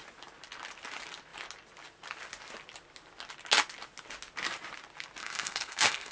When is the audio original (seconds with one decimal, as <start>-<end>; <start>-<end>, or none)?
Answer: 0.0-5.2